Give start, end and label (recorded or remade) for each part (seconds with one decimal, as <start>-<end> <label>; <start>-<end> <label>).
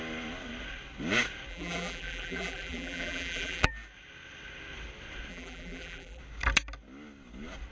0.0-1.5 recorded; 1.5-3.7 remade; 3.7-5.3 recorded; 5.3-6.2 remade; 6.2-7.7 recorded